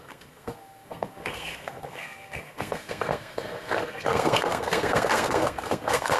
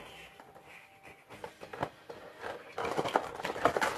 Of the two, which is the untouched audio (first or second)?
second